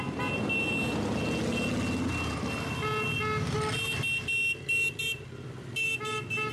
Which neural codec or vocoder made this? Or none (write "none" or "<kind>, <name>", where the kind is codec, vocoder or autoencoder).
none